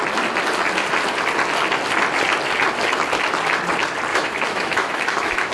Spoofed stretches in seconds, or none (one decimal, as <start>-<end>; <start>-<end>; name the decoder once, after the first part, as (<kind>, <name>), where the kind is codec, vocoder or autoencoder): 4.1-5.5 (autoencoder, DAC-VAE)